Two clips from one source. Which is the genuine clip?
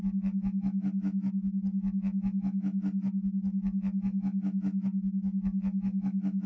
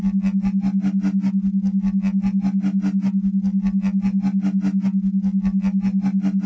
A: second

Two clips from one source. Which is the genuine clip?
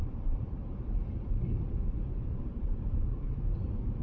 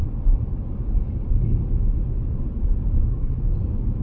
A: second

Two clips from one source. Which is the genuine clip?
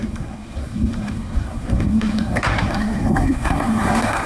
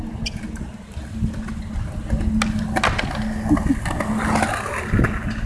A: second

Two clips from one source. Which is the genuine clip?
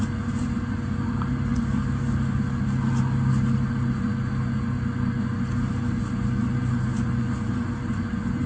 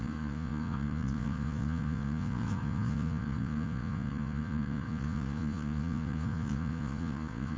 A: first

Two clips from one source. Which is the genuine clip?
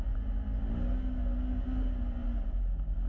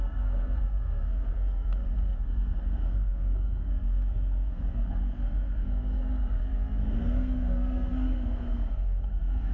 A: first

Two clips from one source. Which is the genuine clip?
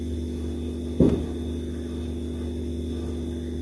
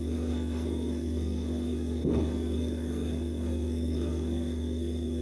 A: first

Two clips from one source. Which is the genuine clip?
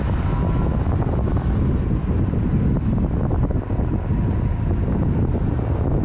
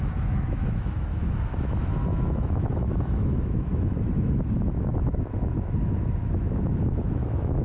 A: first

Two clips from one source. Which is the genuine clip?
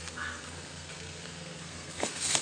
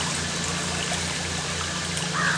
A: second